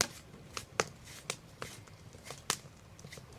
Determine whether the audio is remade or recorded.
recorded